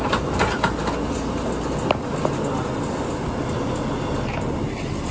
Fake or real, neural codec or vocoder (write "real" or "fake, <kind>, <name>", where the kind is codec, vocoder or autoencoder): real